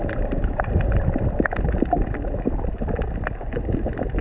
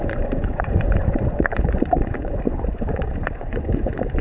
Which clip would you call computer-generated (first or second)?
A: second